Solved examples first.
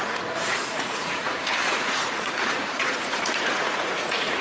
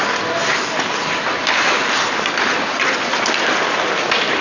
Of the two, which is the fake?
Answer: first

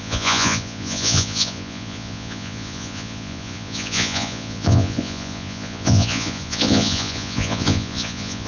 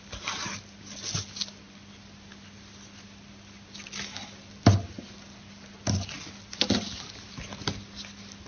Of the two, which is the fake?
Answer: first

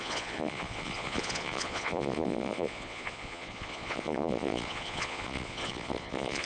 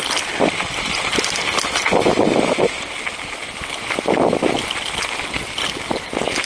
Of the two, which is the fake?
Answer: first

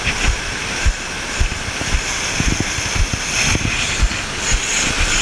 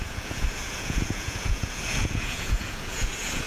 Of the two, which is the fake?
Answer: second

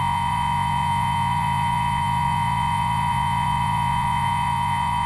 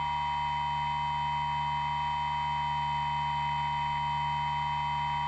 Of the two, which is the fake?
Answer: first